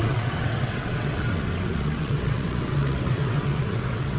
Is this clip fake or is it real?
fake